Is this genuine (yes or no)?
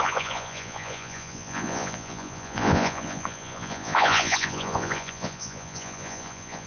no